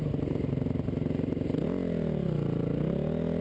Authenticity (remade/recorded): recorded